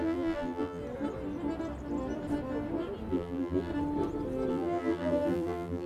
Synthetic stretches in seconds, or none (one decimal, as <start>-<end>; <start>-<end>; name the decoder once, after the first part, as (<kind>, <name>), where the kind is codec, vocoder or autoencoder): 0.0-0.8 (vocoder, BigVGAN v2); 3.1-3.7; 4.5-5.9